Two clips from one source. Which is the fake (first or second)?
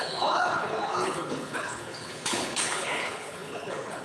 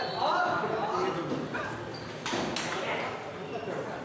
first